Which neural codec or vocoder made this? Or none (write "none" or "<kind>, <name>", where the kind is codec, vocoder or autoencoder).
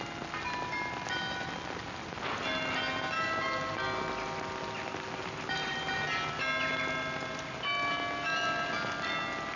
none